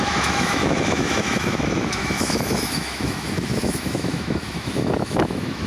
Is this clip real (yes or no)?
no